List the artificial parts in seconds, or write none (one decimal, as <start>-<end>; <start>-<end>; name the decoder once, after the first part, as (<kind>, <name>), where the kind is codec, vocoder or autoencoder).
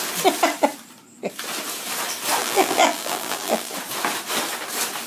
2.4-3.7 (vocoder, BigVGAN v2)